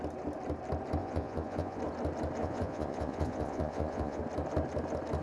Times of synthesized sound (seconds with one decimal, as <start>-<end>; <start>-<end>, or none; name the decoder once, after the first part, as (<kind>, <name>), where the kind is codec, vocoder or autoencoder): 1.0-1.8 (vocoder, Vocos); 2.4-4.2